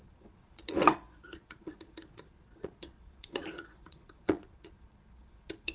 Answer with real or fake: fake